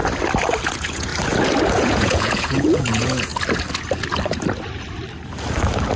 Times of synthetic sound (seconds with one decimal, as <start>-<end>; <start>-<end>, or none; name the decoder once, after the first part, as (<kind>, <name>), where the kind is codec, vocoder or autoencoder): 0.7-1.1 (vocoder, Vocos); 1.8-3.3

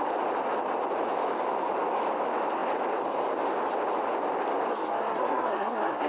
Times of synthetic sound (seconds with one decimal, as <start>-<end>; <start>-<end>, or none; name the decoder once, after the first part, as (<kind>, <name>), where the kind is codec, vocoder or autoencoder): 4.7-6.1 (codec, SNAC)

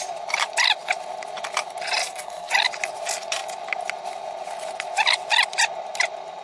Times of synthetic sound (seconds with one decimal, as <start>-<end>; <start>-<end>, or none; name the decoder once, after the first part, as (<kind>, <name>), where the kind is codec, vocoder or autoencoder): 2.0-2.5 (codec, SNAC)

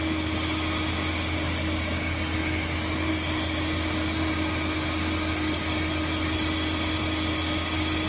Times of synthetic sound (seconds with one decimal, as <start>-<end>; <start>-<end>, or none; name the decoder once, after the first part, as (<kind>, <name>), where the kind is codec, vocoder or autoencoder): none

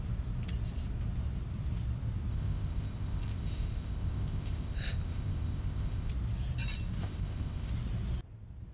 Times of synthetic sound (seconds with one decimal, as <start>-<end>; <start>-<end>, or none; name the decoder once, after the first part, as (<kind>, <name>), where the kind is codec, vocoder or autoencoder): 2.3-6.1 (codec, ZipCodec); 7.0-7.7

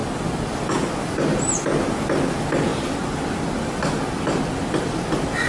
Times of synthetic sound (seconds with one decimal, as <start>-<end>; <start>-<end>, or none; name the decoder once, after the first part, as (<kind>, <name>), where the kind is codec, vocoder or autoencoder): none

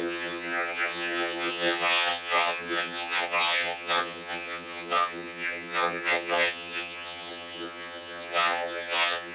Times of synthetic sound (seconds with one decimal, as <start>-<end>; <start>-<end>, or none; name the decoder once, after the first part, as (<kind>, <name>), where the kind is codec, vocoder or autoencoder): 0.0-9.3 (vocoder, HiFi-GAN)